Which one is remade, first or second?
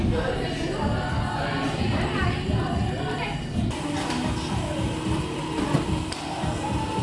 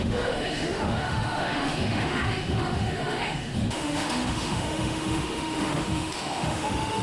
second